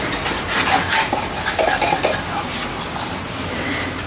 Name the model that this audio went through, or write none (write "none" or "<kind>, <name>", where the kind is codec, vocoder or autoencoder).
none